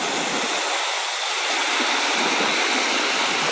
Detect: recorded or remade recorded